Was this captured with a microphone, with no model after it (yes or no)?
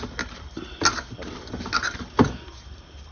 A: yes